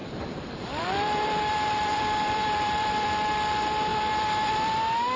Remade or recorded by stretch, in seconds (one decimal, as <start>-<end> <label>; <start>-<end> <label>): 0.0-3.1 remade; 3.1-3.9 recorded; 3.9-4.8 remade; 4.8-5.2 recorded